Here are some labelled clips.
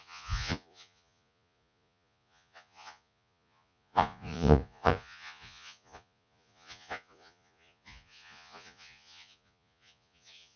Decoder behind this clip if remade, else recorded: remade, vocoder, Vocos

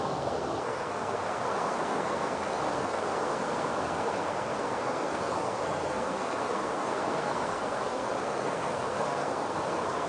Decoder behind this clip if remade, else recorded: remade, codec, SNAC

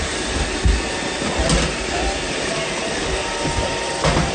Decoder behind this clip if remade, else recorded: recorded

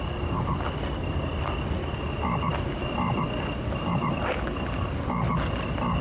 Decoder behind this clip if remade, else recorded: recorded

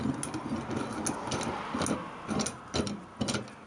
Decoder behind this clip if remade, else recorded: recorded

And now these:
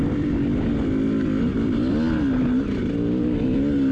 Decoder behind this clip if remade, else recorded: recorded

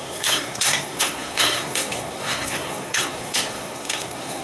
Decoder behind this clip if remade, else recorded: remade, codec, SNAC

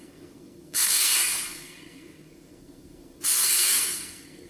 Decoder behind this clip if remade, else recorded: remade, codec, SNAC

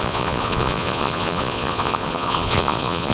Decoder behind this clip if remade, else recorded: remade, vocoder, Vocos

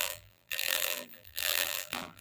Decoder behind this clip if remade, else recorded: remade, vocoder, BigVGAN v2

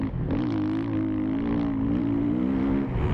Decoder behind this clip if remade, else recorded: recorded